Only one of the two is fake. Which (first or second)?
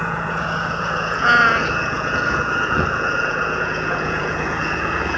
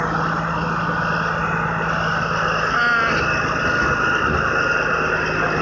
first